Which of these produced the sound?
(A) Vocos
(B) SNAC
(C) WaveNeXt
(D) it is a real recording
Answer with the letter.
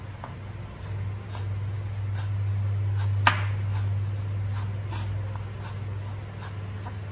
D